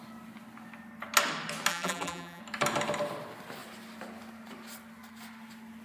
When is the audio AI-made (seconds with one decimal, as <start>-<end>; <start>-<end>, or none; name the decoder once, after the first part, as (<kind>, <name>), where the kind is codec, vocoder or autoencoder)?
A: 1.7-2.4 (vocoder, BigVGAN v2)